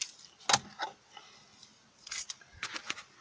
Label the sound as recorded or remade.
recorded